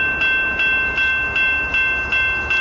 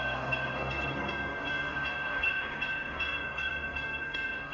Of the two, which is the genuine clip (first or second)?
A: first